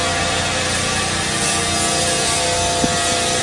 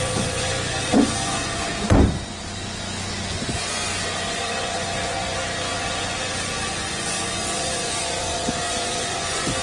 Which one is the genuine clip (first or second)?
first